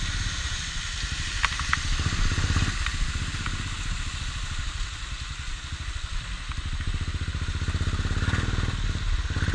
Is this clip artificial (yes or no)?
no